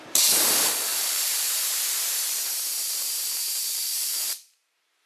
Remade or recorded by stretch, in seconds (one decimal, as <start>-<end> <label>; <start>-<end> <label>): 0.0-5.1 remade